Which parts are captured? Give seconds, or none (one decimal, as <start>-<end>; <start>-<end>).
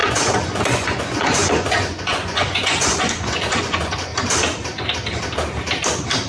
4.1-6.3